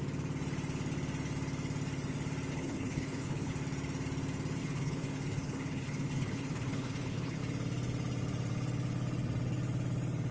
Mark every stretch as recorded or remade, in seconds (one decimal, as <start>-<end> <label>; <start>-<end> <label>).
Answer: 0.0-2.5 recorded; 2.5-3.5 remade; 3.5-4.6 recorded; 4.6-7.4 remade; 7.4-10.3 recorded